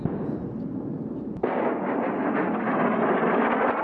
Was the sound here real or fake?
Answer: real